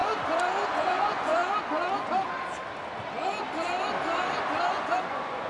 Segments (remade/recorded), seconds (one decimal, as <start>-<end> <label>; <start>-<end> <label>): 0.0-0.7 recorded; 0.7-1.4 remade; 1.4-4.7 recorded; 4.7-5.5 remade